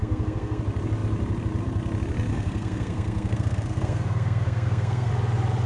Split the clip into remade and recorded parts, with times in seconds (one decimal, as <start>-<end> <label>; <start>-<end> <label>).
0.0-0.6 remade; 0.6-2.3 recorded; 2.3-5.1 remade; 5.1-5.7 recorded